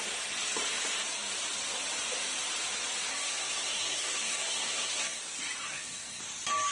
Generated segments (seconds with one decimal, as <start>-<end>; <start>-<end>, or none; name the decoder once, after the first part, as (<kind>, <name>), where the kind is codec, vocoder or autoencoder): 3.1-5.2 (codec, SNAC); 5.7-6.2